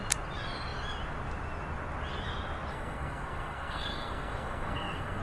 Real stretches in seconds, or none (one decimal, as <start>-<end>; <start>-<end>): 0.0-2.7